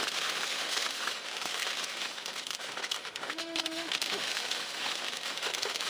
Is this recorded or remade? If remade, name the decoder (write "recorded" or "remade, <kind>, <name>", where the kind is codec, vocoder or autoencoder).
remade, autoencoder, DAC-VAE